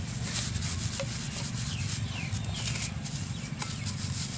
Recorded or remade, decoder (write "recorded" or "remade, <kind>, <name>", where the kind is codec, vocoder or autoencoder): recorded